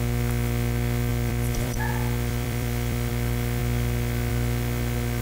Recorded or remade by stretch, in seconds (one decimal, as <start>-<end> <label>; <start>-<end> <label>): 0.0-1.1 recorded; 1.1-1.9 remade; 1.9-2.3 recorded; 2.3-3.1 remade; 3.1-5.2 recorded